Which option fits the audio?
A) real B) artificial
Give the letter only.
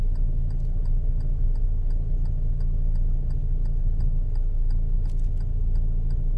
A